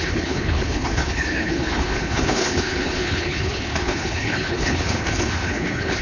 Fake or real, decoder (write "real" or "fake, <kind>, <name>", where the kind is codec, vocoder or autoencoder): fake, codec, HILCodec